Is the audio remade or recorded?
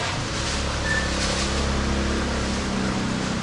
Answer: recorded